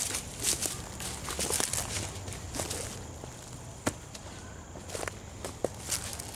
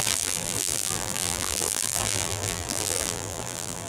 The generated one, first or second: second